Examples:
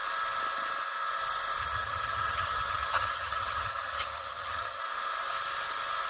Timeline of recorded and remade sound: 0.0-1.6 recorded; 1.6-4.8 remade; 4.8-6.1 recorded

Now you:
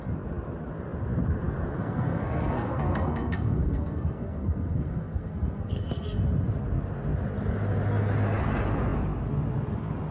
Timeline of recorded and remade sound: 0.0-1.8 recorded; 1.8-6.2 remade; 6.2-10.1 recorded

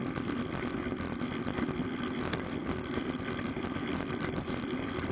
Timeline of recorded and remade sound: 0.0-5.1 recorded

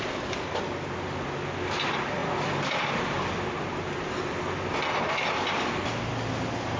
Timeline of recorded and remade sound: 0.0-6.8 recorded

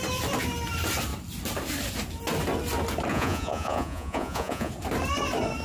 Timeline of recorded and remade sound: 0.0-3.1 recorded; 3.1-4.7 remade; 4.7-5.6 recorded

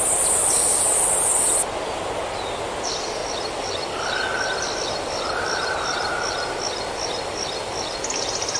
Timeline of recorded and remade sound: 0.0-8.6 recorded